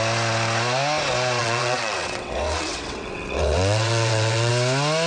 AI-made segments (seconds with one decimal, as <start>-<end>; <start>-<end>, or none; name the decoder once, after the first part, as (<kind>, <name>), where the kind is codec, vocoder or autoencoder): 1.4-4.5 (vocoder, WaveNeXt)